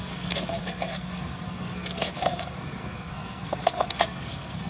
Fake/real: fake